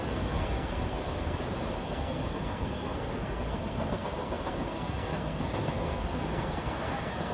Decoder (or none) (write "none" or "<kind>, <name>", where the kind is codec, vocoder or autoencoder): codec, SNAC